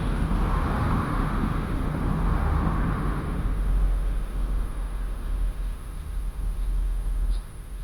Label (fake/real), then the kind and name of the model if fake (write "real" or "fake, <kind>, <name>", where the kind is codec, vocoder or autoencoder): fake, autoencoder, DAC-VAE